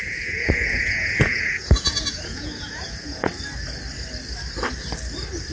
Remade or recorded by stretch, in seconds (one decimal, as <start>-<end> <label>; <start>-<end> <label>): 0.0-3.3 remade; 3.3-5.5 recorded